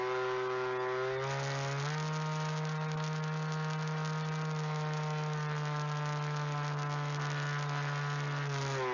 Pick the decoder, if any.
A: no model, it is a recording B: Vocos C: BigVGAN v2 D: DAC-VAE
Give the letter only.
A